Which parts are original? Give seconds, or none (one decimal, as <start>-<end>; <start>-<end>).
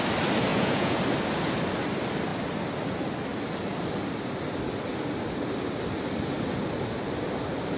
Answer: 0.0-0.5; 1.0-7.8